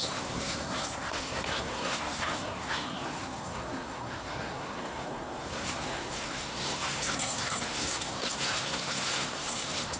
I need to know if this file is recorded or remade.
remade